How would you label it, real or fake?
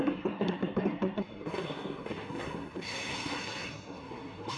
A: fake